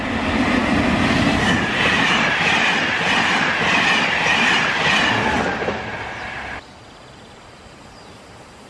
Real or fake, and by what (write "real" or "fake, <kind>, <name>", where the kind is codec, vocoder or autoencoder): real